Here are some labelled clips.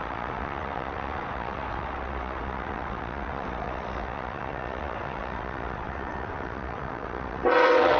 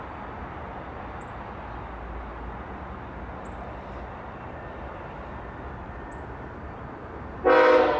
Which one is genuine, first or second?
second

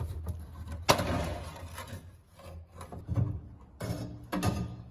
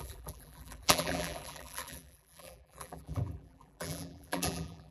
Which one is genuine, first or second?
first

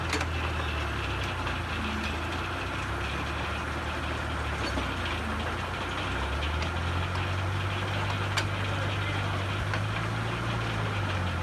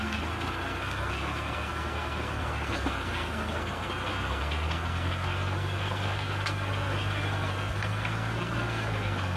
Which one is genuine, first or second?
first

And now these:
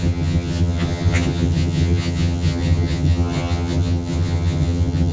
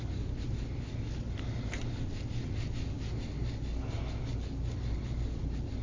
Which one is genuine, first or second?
second